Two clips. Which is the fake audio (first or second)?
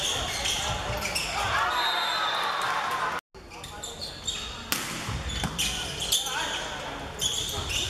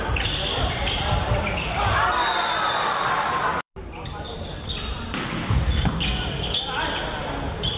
second